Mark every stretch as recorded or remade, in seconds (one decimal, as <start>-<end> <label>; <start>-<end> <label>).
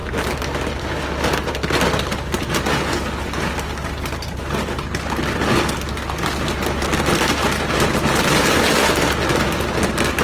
0.0-10.2 recorded